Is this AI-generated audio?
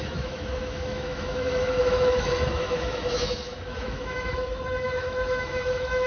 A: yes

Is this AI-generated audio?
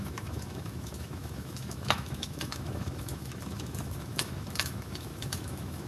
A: yes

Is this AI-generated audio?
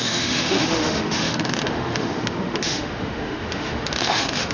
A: yes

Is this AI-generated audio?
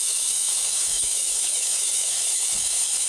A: yes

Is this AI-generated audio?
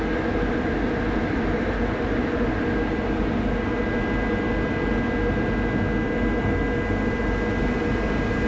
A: no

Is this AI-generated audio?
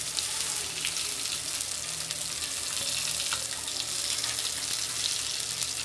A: no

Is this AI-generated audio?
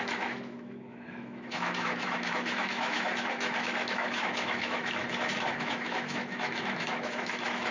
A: yes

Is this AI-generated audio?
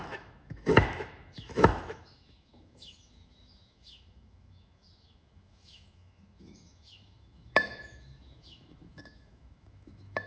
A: yes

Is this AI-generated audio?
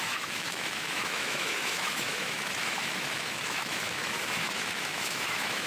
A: yes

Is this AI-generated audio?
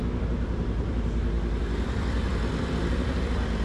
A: no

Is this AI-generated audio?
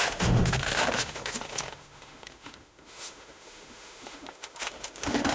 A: yes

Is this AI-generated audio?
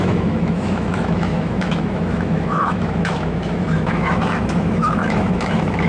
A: yes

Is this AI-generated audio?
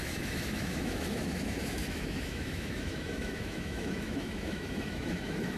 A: yes